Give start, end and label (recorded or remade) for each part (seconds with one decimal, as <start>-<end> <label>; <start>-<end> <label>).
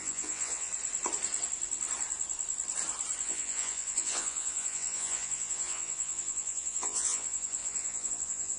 0.0-0.7 remade; 0.7-3.2 recorded; 3.2-8.6 remade